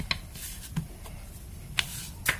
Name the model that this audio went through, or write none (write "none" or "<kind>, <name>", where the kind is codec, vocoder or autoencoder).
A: none